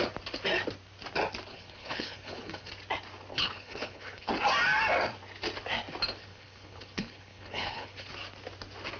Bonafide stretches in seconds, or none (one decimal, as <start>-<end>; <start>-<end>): 0.0-1.5; 2.7-3.3; 4.3-6.2; 8.1-9.0

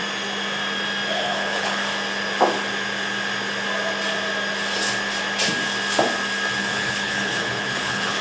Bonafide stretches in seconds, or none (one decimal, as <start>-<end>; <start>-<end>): 0.0-1.1; 1.8-6.6

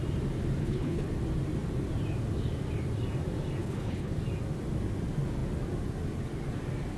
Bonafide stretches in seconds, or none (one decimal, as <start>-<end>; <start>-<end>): 0.0-0.6; 1.1-3.6; 4.1-7.0

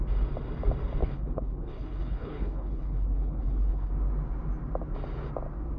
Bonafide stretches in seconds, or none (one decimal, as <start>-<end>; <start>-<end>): 0.0-1.0; 3.9-5.8

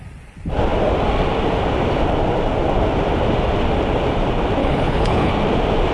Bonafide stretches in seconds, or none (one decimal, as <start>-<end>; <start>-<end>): 0.0-4.6; 5.3-5.9